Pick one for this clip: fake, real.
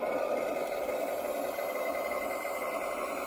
real